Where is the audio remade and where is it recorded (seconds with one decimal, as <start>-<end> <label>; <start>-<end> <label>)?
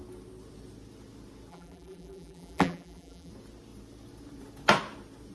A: 0.0-1.5 recorded; 1.5-3.3 remade; 3.3-5.3 recorded